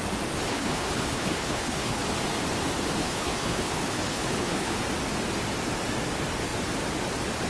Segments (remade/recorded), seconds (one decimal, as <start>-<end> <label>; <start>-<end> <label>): 0.0-0.5 recorded; 0.5-2.0 remade; 2.0-3.0 recorded; 3.0-4.8 remade; 4.8-7.5 recorded